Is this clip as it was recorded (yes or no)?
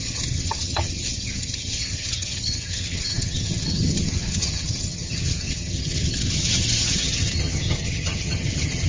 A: no